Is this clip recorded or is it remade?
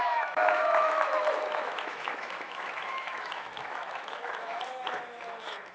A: remade